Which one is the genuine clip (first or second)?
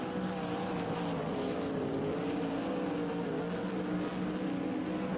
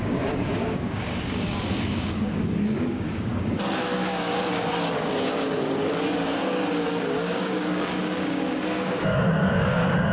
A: first